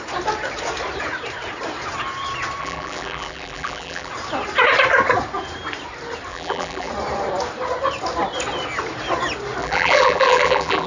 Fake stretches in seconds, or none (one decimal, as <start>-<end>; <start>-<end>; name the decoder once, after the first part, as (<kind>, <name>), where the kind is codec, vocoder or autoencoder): 2.6-4.1 (vocoder, BigVGAN v2); 6.3-6.9; 9.6-10.9